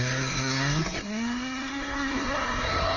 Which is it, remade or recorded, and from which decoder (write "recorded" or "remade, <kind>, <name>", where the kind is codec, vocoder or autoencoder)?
remade, codec, SNAC